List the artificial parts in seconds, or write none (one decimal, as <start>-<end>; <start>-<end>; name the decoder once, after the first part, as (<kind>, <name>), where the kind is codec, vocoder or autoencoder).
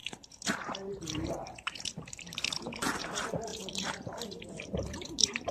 0.0-5.5 (vocoder, BigVGAN v2)